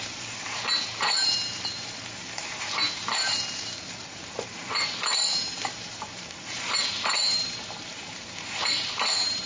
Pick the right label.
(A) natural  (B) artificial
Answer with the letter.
B